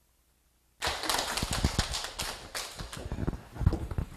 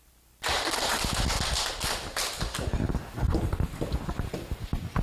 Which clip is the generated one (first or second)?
second